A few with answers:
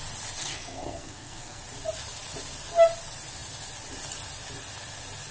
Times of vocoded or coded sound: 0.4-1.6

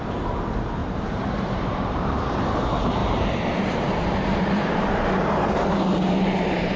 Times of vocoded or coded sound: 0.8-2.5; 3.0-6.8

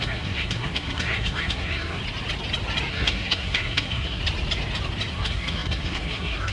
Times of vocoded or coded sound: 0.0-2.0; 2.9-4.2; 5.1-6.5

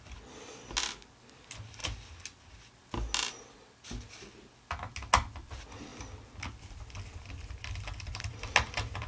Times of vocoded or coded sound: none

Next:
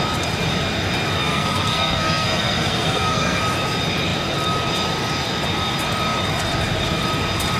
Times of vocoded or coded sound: 1.2-3.4

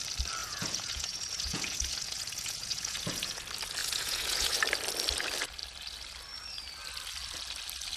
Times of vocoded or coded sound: 0.4-3.4; 3.8-4.6

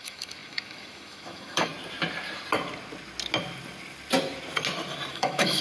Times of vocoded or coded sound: 0.0-1.7; 5.1-5.6

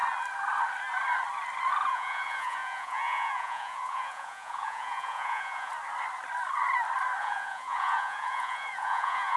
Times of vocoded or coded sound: 1.9-5.7; 7.2-9.4